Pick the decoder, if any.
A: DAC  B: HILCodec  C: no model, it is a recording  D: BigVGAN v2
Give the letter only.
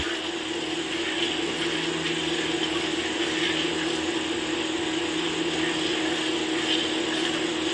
C